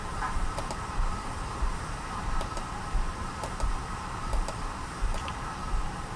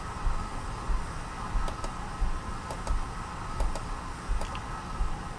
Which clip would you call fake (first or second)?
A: first